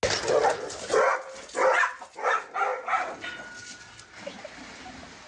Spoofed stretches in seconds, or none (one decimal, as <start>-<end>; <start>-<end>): none